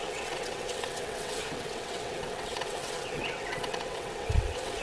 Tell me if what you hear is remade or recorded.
remade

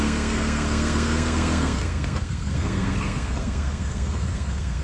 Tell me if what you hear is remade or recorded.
remade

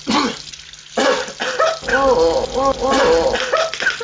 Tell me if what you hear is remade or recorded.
recorded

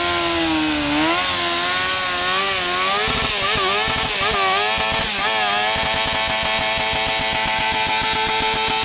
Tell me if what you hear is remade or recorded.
recorded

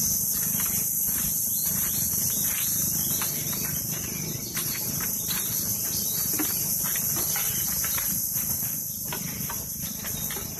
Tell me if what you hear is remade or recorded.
remade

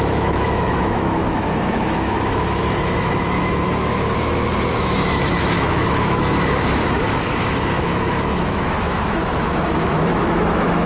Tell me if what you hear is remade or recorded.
remade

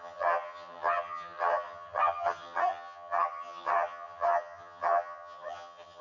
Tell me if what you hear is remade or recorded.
remade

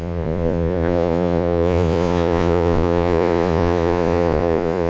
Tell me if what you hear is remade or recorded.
remade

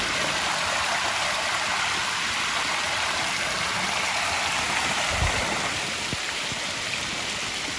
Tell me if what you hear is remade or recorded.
recorded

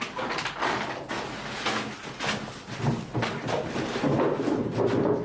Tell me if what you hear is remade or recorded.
recorded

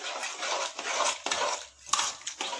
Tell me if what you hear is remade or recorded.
remade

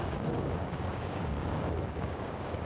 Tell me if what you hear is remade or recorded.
remade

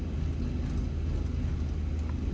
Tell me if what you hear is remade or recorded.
recorded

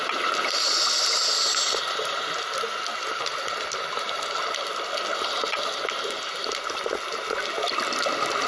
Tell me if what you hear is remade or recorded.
recorded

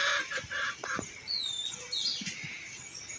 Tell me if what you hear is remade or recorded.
recorded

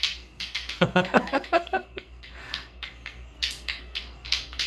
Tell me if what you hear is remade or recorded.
remade